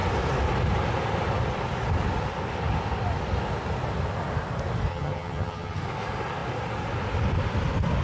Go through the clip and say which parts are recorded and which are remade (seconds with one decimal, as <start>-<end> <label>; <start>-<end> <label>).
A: 0.0-4.9 recorded; 4.9-5.8 remade; 5.8-8.0 recorded